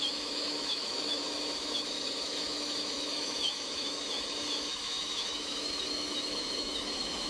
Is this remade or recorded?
remade